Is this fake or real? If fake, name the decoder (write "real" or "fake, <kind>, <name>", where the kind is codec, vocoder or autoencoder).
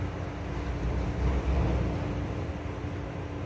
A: real